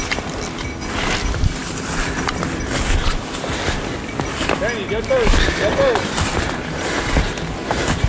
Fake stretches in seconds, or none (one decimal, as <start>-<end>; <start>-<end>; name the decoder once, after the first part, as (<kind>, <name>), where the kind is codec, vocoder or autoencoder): none